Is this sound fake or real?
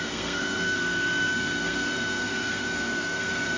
fake